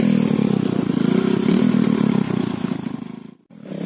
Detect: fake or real real